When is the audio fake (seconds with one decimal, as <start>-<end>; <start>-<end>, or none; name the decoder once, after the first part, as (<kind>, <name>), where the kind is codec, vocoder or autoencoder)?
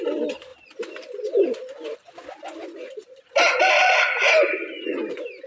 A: 0.0-5.5 (vocoder, BigVGAN v2)